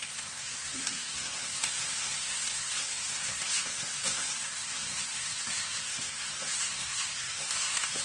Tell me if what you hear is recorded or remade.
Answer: remade